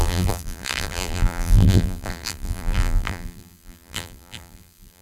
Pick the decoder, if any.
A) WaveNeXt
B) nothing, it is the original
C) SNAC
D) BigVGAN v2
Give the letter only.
D